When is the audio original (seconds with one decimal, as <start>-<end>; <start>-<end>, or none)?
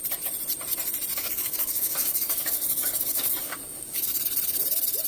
0.0-1.1; 4.2-5.1